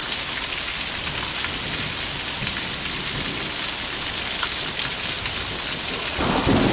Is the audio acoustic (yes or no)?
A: yes